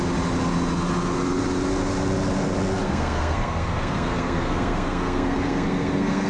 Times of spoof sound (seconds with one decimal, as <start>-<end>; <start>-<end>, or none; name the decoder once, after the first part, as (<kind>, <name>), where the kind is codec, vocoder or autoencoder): 2.8-6.3 (codec, SNAC)